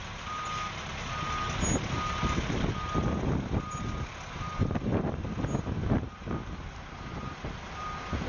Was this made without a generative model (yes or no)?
yes